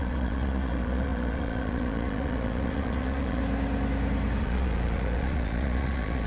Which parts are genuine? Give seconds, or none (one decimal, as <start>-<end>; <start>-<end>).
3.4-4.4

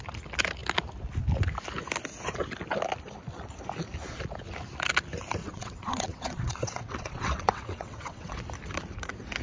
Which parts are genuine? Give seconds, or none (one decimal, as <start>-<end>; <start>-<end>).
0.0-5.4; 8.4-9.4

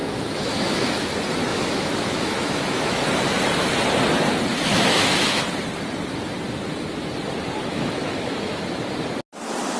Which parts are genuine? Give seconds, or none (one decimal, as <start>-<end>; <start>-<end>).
1.1-1.5; 3.0-4.5; 5.4-7.7; 8.6-9.8